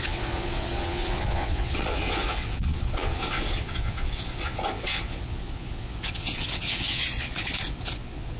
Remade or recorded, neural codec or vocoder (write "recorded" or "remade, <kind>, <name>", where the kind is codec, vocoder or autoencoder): remade, vocoder, Vocos